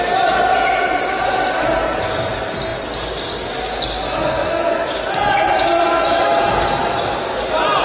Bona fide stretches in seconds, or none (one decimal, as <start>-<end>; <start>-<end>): 0.0-7.8